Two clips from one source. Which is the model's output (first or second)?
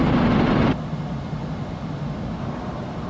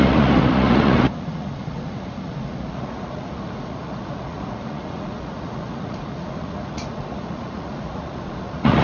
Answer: second